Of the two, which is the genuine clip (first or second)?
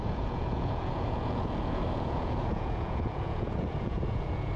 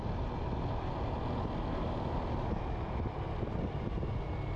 second